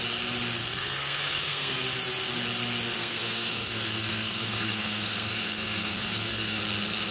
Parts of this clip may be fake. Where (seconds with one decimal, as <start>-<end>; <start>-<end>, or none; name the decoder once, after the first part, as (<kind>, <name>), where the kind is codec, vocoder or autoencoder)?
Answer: 0.6-1.8 (codec, SNAC); 3.0-6.6